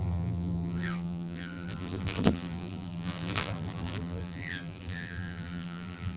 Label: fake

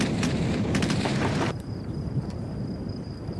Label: fake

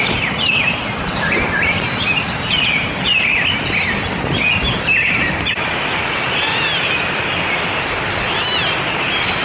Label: real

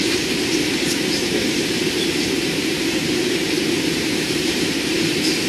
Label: fake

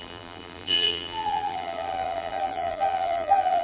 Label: fake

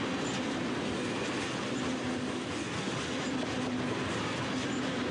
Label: real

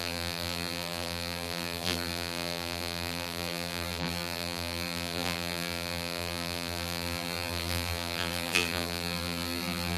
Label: fake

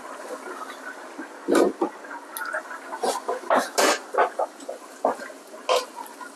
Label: real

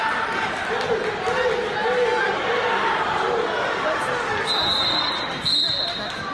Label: real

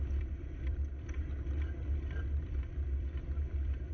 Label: fake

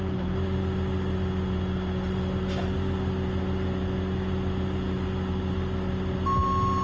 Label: real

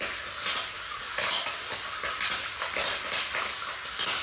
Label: real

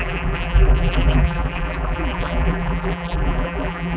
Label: fake